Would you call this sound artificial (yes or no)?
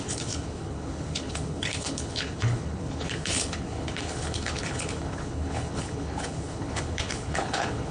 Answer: yes